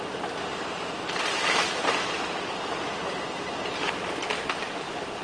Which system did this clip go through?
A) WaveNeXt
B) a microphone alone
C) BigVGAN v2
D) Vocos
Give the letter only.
B